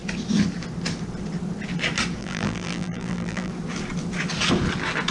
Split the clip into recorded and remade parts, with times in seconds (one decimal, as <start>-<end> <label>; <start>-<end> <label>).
0.0-2.2 recorded; 2.2-3.5 remade; 3.5-5.1 recorded